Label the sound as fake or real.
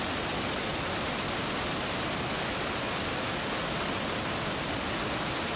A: real